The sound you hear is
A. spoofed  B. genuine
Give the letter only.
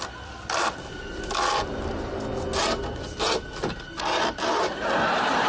B